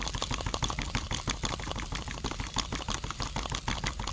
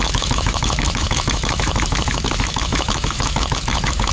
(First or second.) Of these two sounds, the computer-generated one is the second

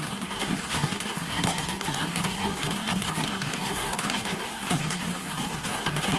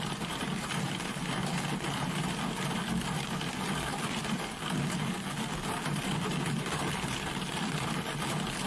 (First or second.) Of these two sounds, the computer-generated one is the first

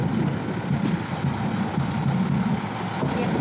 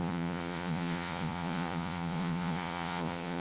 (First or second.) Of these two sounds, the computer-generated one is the second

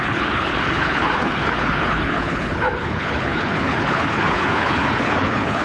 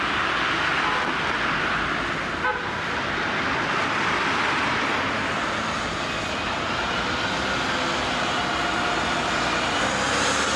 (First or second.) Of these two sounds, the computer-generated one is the first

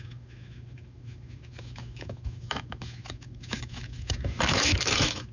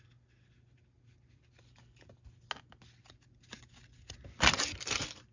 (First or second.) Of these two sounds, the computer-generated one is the first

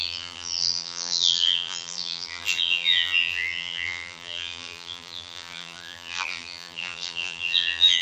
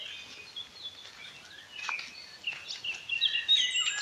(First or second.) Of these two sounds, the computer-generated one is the first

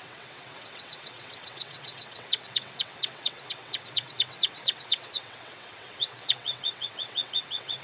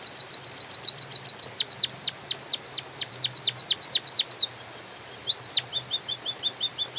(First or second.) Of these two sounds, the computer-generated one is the first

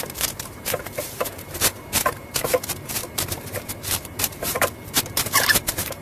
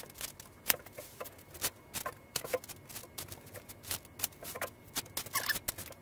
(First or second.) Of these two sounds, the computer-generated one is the first